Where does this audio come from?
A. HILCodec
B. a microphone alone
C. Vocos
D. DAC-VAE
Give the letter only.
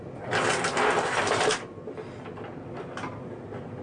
B